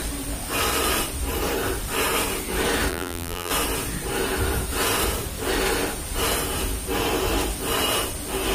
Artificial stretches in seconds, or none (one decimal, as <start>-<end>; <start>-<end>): 2.9-3.5

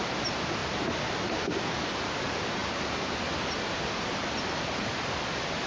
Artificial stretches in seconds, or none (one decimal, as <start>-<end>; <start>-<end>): none

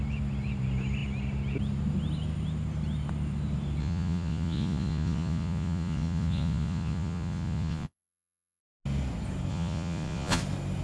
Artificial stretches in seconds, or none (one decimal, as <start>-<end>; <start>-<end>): 3.8-8.6; 9.5-10.4

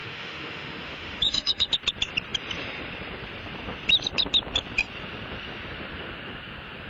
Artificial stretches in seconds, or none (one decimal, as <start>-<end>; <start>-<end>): 0.0-1.7

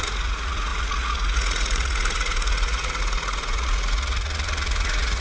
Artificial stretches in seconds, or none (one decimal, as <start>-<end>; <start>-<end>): 0.0-5.2